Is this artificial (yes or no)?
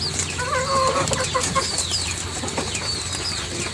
no